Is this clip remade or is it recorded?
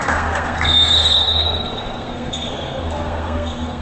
remade